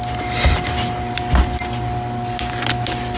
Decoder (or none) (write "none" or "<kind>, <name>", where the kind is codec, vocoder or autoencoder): none